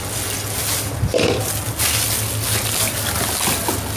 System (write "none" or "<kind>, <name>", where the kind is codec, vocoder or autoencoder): none